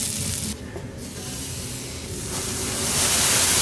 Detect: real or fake real